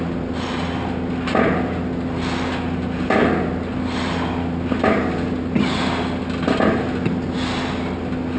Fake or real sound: real